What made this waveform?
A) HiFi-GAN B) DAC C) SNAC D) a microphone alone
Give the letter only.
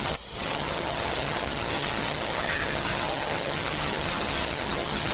A